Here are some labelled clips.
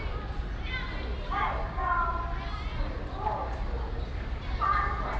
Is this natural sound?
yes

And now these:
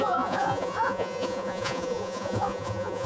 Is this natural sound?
no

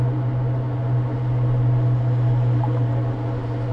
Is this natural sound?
yes